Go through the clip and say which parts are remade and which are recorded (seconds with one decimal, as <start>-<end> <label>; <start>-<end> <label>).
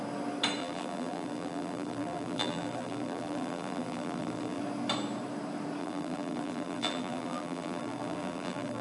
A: 0.0-0.6 recorded; 0.6-4.6 remade; 4.6-5.8 recorded; 5.8-8.8 remade